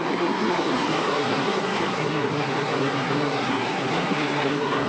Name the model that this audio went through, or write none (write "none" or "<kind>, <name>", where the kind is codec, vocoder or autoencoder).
codec, SNAC